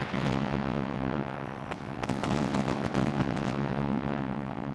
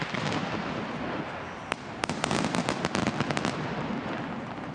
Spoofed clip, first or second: first